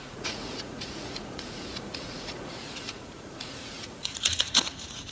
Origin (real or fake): fake